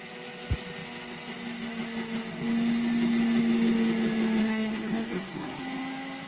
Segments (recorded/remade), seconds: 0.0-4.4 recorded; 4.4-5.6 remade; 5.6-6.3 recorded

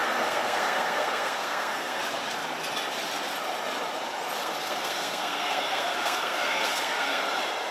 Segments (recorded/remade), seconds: 0.0-2.0 remade; 2.0-4.4 recorded; 4.4-7.2 remade; 7.2-7.7 recorded